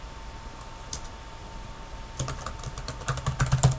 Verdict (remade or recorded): recorded